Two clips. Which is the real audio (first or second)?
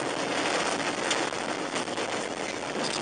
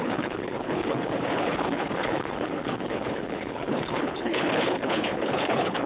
first